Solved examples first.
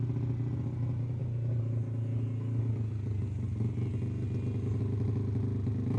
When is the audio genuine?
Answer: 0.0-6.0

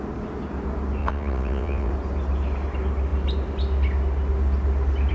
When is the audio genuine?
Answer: 0.0-1.0; 1.9-5.1

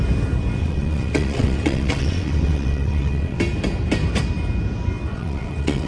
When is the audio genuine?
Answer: 0.0-0.6; 3.4-5.1

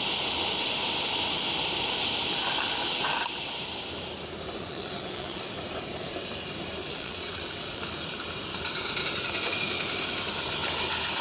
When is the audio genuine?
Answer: 0.0-2.8; 3.5-4.6; 5.4-6.8; 7.8-11.2